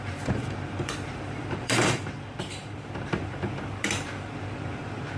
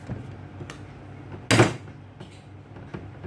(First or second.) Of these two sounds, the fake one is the first